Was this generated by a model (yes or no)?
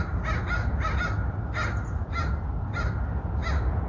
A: no